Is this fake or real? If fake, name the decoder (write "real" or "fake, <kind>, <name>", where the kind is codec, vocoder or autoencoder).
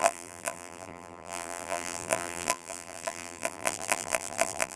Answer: fake, vocoder, BigVGAN v2